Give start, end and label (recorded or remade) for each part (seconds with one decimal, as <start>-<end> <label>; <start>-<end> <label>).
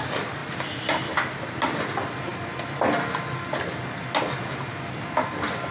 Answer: 0.0-5.7 recorded